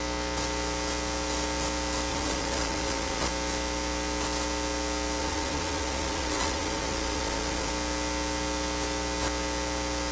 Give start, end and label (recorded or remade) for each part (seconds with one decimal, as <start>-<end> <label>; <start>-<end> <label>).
0.0-2.1 recorded; 2.1-3.3 remade; 3.3-5.2 recorded; 5.2-7.7 remade; 7.7-10.1 recorded